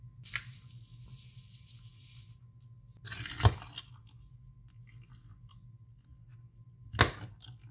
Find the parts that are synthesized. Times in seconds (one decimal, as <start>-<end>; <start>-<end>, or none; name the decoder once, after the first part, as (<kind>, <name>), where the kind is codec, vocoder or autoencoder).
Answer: none